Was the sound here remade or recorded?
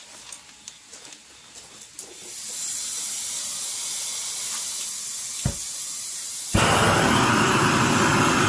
recorded